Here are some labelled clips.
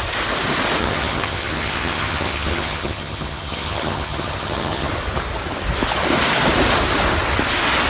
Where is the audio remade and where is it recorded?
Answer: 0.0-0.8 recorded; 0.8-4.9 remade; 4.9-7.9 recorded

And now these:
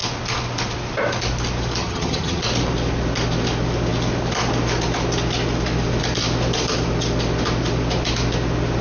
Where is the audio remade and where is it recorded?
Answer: 0.0-1.8 recorded; 1.8-2.4 remade; 2.4-8.8 recorded

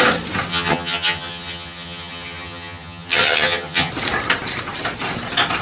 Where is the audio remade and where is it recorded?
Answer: 0.0-0.5 recorded; 0.5-3.9 remade; 3.9-5.6 recorded